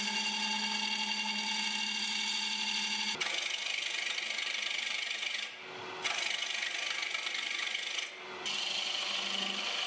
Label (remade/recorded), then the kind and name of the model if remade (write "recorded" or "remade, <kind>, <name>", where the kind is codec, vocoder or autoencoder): recorded